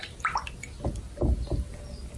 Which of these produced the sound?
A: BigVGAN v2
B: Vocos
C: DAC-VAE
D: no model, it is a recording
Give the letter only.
D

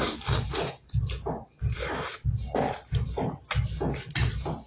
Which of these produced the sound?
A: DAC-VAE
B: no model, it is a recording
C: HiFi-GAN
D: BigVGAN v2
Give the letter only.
B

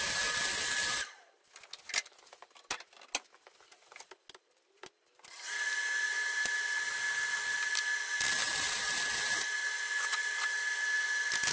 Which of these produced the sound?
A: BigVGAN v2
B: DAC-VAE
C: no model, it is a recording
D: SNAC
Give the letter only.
C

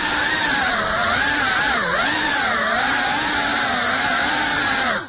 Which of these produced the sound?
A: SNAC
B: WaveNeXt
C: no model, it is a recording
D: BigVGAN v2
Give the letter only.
D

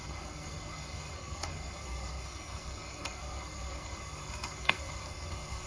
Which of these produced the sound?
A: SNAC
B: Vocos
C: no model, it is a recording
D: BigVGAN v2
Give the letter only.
A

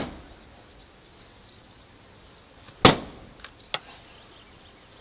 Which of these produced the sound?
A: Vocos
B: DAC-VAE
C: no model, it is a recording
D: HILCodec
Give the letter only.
C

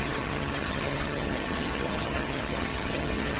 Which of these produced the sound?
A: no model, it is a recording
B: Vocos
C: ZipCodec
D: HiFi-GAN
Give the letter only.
D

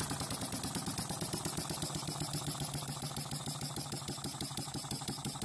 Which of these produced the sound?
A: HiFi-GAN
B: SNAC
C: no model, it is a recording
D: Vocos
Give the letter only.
C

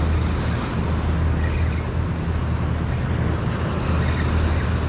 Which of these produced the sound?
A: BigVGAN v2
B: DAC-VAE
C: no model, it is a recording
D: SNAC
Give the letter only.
C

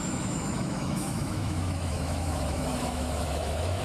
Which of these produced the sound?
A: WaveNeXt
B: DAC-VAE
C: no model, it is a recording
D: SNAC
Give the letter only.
B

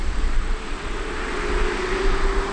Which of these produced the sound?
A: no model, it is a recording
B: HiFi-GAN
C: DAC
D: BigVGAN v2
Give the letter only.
A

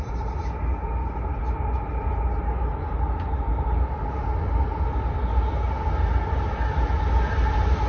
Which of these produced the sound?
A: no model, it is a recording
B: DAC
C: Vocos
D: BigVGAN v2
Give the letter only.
A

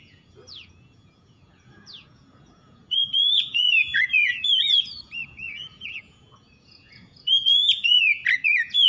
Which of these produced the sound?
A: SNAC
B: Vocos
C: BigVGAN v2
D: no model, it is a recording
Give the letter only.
B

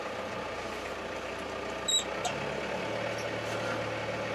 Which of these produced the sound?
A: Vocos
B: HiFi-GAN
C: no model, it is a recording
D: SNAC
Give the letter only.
C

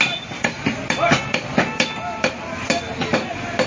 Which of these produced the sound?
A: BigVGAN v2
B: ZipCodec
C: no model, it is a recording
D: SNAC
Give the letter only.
C